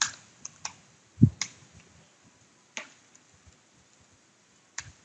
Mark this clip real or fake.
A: real